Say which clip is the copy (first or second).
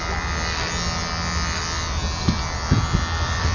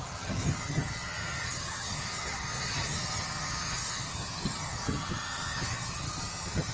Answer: second